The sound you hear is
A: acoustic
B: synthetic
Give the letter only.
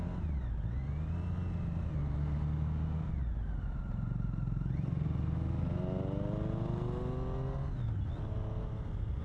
A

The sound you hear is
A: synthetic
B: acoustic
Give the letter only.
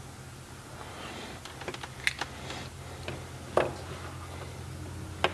B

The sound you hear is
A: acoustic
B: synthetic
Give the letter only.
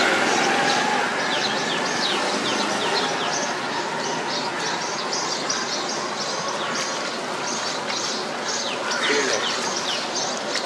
A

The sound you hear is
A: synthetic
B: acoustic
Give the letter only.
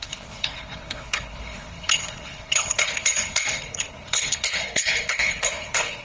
A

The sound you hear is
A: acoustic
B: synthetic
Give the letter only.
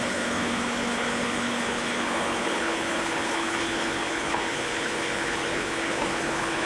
B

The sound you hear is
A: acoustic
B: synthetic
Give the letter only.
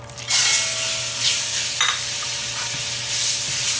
A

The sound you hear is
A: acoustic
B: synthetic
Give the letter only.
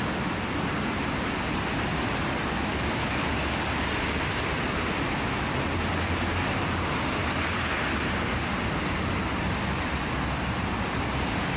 A